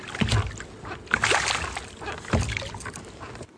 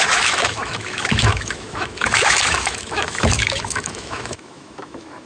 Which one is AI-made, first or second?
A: second